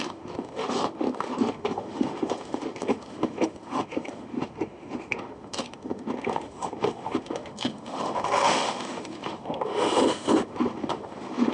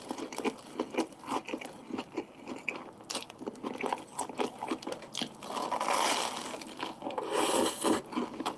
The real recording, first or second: second